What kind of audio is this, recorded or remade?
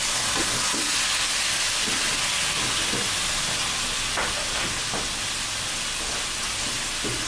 recorded